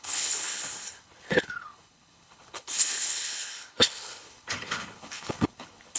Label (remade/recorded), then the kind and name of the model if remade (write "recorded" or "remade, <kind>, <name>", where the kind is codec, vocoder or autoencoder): remade, codec, HILCodec